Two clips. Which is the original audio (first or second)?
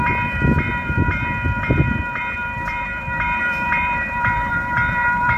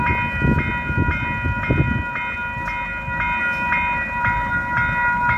second